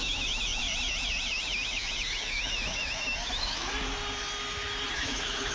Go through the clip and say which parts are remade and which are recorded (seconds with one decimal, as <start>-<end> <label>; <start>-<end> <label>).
0.0-0.6 remade; 0.6-1.3 recorded; 1.3-3.7 remade; 3.7-4.9 recorded; 4.9-5.5 remade